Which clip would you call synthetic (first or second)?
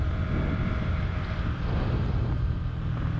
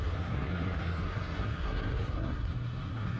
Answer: second